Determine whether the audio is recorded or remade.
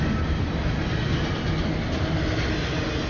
recorded